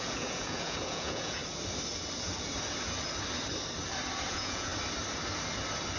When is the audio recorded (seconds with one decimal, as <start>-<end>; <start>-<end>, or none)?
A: 1.4-4.3; 4.7-6.0